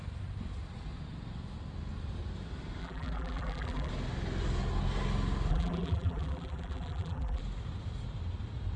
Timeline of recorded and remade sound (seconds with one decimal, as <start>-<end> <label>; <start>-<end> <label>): 0.0-2.8 recorded; 2.8-3.9 remade; 3.9-5.5 recorded; 5.5-7.4 remade; 7.4-8.8 recorded